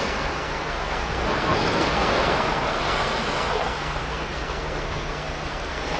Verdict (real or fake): fake